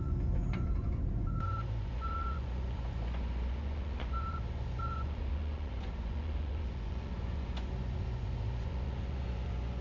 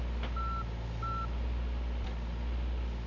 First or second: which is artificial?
first